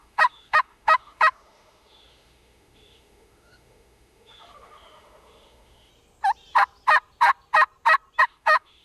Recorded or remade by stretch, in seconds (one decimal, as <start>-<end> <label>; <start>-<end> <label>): 0.0-5.9 remade; 5.9-8.2 recorded; 8.2-8.8 remade